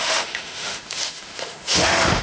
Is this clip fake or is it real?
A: fake